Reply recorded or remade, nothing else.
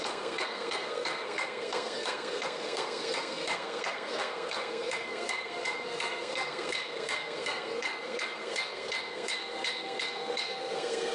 remade